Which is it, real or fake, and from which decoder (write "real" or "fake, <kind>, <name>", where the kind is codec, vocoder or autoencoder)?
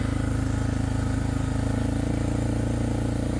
real